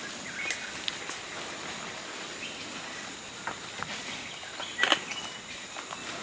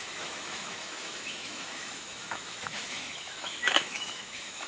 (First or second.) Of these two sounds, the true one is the first